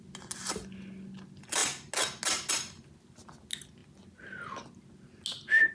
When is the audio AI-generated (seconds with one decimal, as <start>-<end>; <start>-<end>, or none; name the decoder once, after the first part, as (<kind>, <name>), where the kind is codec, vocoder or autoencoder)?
none